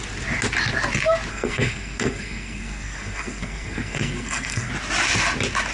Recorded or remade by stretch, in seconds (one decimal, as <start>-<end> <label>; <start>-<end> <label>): 0.0-1.3 recorded; 1.3-4.7 remade; 4.7-5.7 recorded